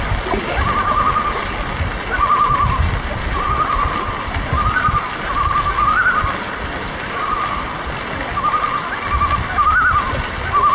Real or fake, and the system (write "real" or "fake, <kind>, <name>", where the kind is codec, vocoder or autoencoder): real